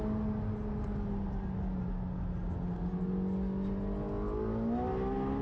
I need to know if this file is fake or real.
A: real